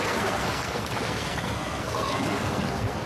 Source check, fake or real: fake